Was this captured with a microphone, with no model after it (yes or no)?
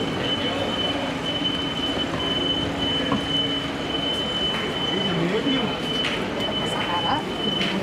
yes